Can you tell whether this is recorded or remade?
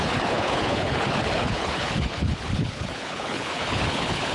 remade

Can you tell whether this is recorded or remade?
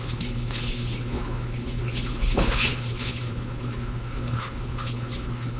remade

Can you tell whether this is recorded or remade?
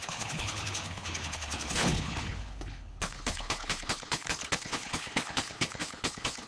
remade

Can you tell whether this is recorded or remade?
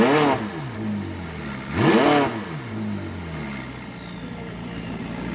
recorded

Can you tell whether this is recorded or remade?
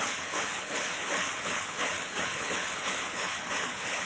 remade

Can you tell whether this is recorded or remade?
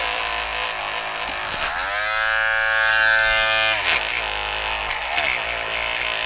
recorded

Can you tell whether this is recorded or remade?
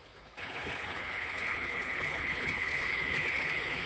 remade